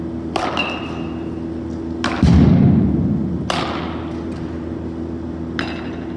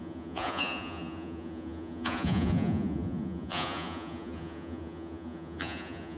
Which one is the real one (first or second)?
first